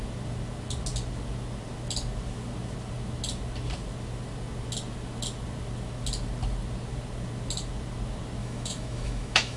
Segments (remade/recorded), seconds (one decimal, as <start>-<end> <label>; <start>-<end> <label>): 0.0-8.4 recorded; 8.4-9.6 remade